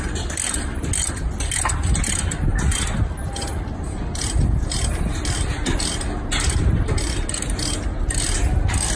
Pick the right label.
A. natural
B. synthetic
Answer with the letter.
A